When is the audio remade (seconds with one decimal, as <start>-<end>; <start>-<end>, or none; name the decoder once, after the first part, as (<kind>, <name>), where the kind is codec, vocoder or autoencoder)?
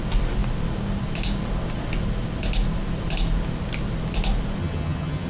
4.6-5.3 (vocoder, HiFi-GAN)